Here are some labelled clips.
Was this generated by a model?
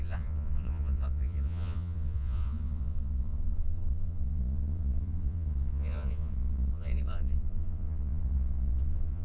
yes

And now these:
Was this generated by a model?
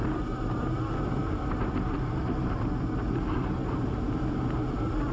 no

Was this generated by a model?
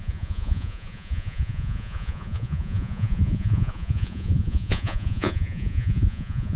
yes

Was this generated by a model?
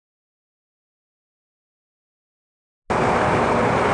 no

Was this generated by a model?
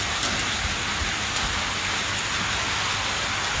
no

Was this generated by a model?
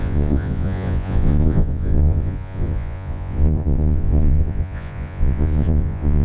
yes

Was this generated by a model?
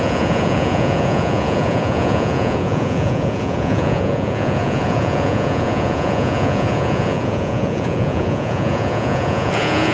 yes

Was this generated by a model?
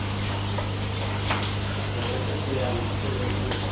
no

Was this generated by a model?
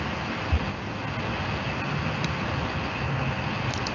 no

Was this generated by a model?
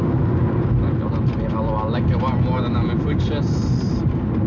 no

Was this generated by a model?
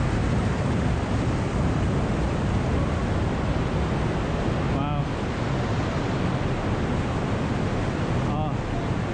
no